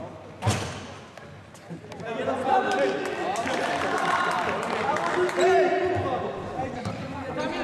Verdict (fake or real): real